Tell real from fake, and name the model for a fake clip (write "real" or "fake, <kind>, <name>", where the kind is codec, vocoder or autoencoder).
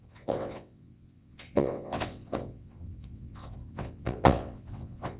fake, vocoder, WaveNeXt